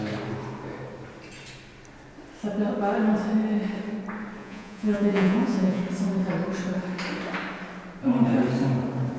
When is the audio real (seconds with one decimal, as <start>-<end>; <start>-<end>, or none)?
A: 0.0-4.4; 5.8-9.2